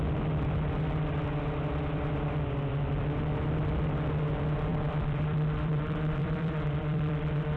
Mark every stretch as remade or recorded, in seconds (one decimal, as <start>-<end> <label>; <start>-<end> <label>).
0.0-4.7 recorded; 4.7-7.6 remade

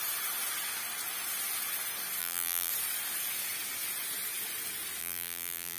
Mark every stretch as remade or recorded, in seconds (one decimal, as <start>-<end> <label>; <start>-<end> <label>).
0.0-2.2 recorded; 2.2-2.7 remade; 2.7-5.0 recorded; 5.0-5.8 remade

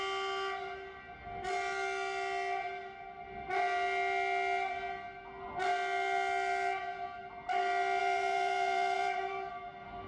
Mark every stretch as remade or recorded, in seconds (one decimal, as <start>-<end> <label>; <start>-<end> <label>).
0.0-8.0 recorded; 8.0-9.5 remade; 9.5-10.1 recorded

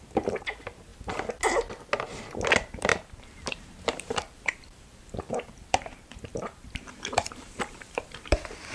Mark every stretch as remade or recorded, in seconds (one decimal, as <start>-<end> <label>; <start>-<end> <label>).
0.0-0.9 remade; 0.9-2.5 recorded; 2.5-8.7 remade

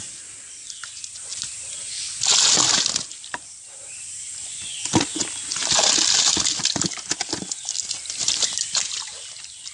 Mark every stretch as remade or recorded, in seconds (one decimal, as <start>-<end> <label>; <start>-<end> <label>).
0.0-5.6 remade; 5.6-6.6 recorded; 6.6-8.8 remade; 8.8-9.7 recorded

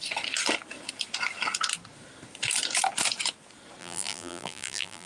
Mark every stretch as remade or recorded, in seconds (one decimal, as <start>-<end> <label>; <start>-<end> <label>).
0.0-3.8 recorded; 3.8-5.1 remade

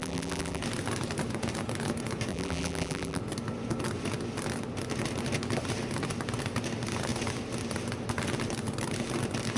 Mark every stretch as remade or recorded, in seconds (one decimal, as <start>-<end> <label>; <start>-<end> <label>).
0.0-0.6 remade; 0.6-2.3 recorded; 2.3-3.2 remade; 3.2-9.6 recorded

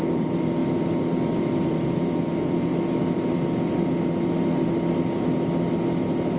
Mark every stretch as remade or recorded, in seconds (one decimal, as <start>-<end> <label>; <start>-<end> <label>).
0.0-0.6 remade; 0.6-1.6 recorded; 1.6-2.7 remade; 2.7-6.4 recorded